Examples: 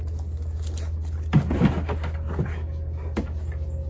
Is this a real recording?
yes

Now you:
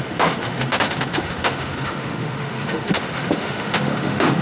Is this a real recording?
no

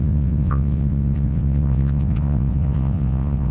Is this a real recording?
no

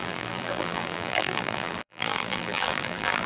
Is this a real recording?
no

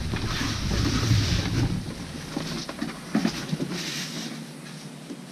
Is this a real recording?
yes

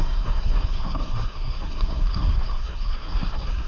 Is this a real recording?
no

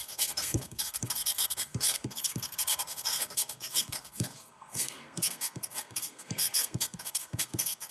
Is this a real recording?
no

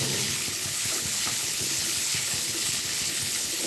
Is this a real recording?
no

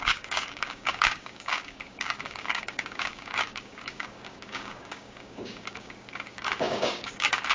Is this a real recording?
no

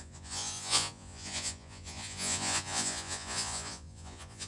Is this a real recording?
no